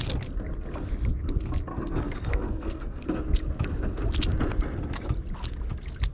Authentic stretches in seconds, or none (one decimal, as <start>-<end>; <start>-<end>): 0.0-1.7; 3.0-6.1